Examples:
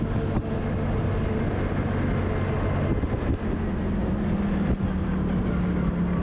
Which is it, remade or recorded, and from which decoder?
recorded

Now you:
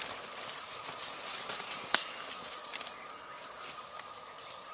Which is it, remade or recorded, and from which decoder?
recorded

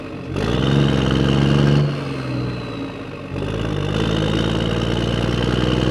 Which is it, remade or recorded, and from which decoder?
recorded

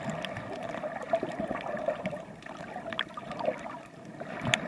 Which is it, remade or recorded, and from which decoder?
recorded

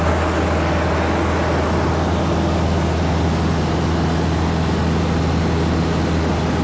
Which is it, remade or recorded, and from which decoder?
recorded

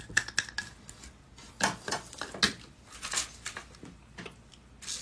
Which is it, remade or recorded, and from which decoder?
recorded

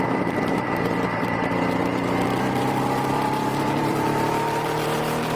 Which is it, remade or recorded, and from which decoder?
remade, vocoder, BigVGAN v2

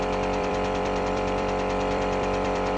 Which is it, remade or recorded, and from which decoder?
remade, vocoder, BigVGAN v2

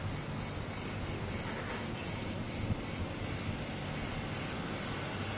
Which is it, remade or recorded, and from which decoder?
recorded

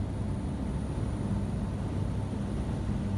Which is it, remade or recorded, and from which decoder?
recorded